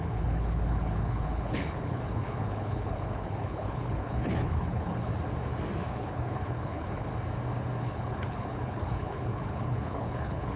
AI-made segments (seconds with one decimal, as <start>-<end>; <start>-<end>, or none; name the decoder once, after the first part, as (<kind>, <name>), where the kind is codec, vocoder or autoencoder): 0.0-5.1 (codec, HILCodec); 5.9-7.1; 7.8-10.6